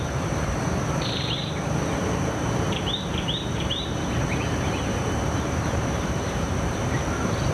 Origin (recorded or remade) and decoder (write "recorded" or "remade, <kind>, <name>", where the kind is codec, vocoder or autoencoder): remade, vocoder, BigVGAN v2